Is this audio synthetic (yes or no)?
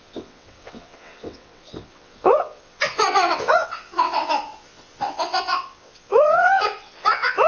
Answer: yes